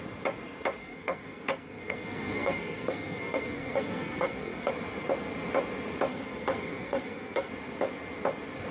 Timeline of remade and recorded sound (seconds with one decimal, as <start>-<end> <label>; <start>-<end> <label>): 0.0-0.8 recorded; 0.8-4.7 remade; 4.7-6.1 recorded; 6.1-7.5 remade; 7.5-8.7 recorded